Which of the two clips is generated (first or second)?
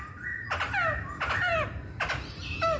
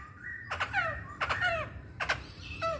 second